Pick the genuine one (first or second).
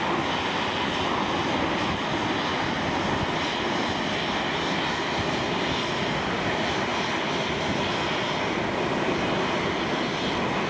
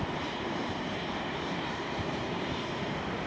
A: first